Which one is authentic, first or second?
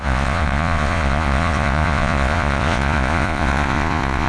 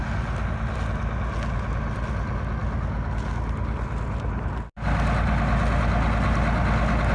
second